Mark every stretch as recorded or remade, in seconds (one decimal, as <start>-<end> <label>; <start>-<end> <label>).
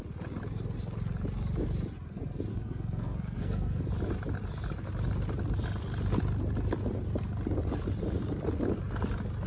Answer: 0.0-2.5 recorded; 2.5-3.8 remade; 3.8-9.5 recorded